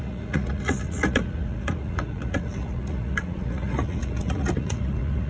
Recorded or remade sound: remade